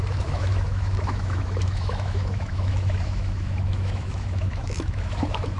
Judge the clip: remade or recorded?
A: remade